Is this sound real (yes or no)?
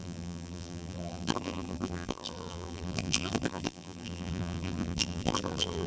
no